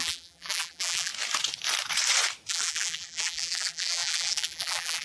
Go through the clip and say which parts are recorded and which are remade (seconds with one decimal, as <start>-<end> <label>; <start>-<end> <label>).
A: 0.0-1.1 remade; 1.1-2.5 recorded; 2.5-5.0 remade